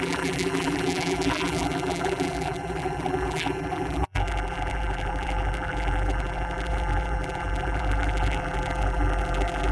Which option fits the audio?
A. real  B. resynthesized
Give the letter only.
B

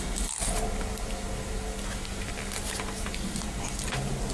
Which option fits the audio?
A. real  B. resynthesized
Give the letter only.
A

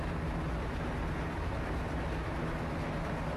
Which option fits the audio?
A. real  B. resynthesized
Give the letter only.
A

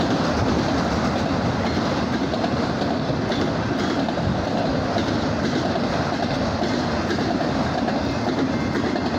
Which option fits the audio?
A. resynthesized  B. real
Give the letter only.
B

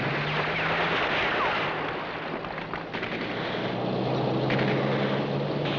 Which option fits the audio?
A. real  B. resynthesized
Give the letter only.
A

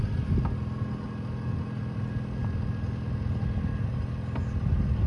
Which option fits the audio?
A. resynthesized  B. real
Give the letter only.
B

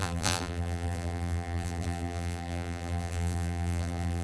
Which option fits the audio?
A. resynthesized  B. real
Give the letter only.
A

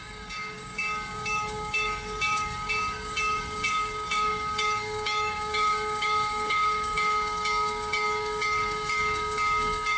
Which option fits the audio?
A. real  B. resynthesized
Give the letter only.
B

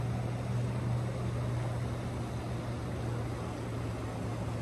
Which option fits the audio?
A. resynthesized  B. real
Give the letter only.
B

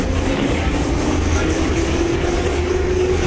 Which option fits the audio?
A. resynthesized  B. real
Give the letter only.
A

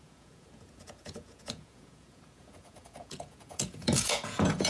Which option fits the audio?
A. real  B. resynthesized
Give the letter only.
B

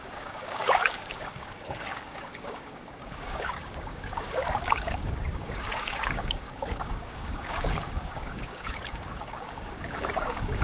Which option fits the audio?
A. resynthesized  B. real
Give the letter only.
A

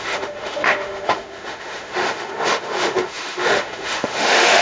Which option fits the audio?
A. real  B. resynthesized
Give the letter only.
B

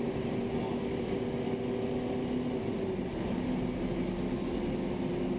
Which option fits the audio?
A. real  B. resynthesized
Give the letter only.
A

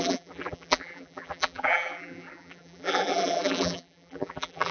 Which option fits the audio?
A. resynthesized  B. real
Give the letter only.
A